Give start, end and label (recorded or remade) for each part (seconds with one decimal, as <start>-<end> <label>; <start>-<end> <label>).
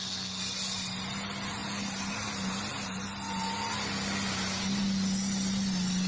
0.0-6.1 recorded